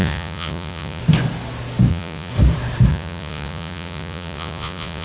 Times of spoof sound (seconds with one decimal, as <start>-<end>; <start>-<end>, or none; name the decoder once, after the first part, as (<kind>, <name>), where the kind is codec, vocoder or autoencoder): 0.0-1.0 (vocoder, Vocos); 1.9-2.3; 2.9-5.0